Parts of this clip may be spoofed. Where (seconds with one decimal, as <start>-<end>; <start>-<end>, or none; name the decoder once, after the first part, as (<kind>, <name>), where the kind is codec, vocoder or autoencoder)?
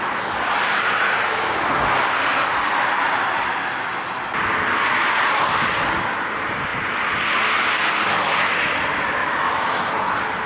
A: 9.2-9.9 (autoencoder, DAC-VAE)